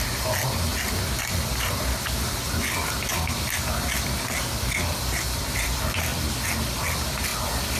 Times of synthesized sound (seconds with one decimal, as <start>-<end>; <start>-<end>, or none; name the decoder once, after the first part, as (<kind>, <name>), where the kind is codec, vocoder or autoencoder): 6.1-6.8 (vocoder, BigVGAN v2)